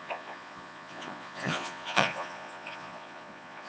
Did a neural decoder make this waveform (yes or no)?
yes